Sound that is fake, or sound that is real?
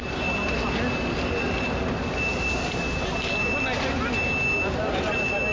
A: real